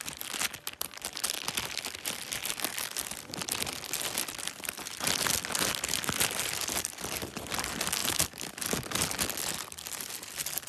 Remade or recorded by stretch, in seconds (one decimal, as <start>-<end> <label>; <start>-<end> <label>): 0.0-10.7 recorded